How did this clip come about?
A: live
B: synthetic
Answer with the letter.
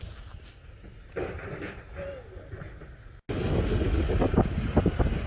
A